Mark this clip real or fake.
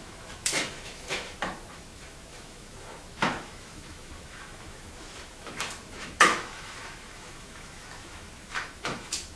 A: fake